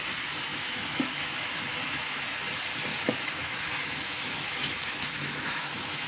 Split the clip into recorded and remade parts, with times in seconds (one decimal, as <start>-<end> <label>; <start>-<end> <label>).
0.0-0.5 recorded; 0.5-2.2 remade; 2.2-2.9 recorded; 2.9-6.1 remade